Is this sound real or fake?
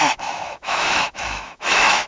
fake